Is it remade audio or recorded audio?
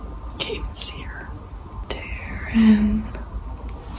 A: recorded